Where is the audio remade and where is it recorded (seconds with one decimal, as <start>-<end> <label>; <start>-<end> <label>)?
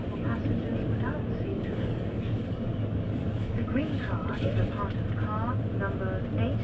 0.0-1.5 recorded; 1.5-4.5 remade; 4.5-6.6 recorded